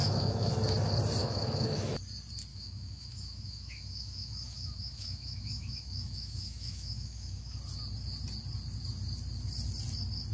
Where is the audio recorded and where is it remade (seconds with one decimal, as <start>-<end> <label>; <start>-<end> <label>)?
0.0-0.5 remade; 0.5-1.2 recorded; 1.2-2.0 remade; 2.0-2.5 recorded; 2.5-7.6 remade; 7.6-10.3 recorded